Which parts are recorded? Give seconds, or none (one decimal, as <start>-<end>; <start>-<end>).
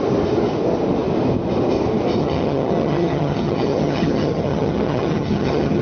0.0-2.2